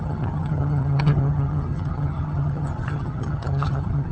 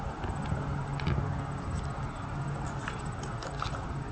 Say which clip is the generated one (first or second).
first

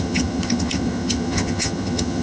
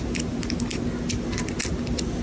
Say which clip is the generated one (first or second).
first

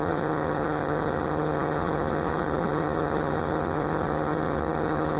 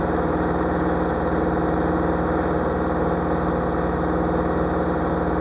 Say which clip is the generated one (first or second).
first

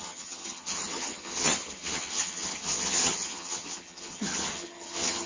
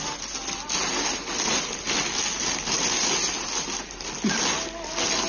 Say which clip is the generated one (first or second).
first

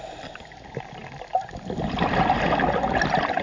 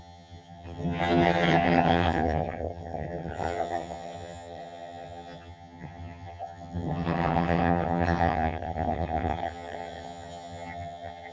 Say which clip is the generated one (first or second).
second